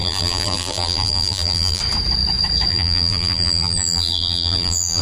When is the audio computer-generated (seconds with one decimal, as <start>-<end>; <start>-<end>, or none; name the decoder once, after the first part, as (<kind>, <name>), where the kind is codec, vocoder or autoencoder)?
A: 0.0-1.8 (vocoder, BigVGAN v2); 2.7-5.0